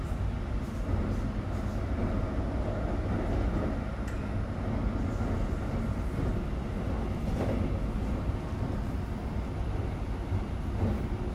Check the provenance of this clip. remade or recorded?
recorded